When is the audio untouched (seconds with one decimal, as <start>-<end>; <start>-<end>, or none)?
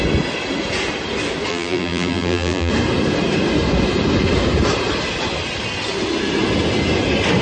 0.0-1.5; 2.7-7.4